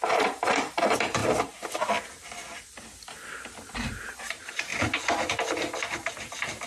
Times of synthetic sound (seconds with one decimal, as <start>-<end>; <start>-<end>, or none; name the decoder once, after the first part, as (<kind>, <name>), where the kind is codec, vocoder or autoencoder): 0.0-1.2 (vocoder, BigVGAN v2); 4.1-4.7